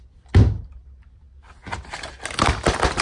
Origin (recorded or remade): recorded